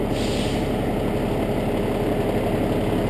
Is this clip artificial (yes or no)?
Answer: no